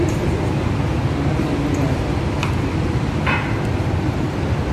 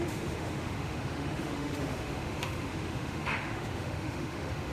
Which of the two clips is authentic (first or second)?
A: first